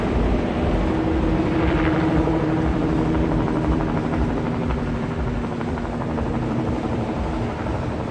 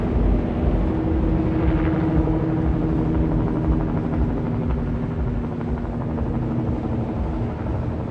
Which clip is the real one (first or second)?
second